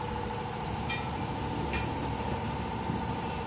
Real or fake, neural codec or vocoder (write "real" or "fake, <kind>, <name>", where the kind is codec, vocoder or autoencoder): real